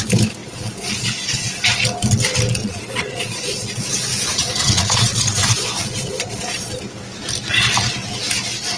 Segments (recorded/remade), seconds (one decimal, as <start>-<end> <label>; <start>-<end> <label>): 0.0-0.4 recorded; 0.4-1.6 remade; 1.6-2.6 recorded; 2.6-6.7 remade; 6.7-8.8 recorded